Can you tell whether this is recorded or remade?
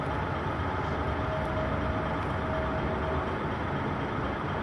recorded